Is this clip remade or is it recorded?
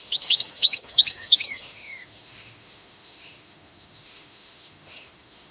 remade